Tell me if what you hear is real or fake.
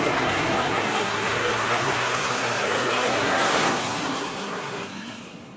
fake